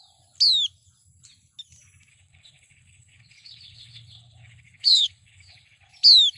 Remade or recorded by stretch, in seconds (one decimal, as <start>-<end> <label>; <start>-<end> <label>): 0.0-2.1 recorded; 2.1-5.9 remade; 5.9-6.4 recorded